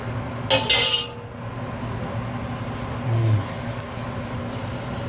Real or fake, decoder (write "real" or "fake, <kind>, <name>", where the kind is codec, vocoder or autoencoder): real